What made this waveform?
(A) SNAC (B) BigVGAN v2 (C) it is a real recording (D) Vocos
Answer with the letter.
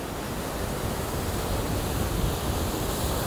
C